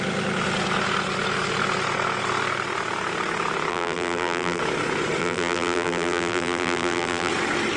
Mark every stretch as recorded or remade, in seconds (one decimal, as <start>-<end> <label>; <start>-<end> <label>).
0.0-3.7 recorded; 3.7-4.6 remade; 4.6-5.2 recorded; 5.2-7.3 remade; 7.3-7.8 recorded